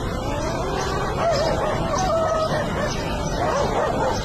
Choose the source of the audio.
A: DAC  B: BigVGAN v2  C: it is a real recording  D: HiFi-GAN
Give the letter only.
C